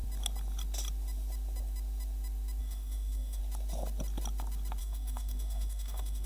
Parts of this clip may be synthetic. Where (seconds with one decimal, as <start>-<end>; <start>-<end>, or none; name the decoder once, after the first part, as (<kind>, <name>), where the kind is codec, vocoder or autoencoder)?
2.6-3.4 (codec, DAC); 4.8-6.3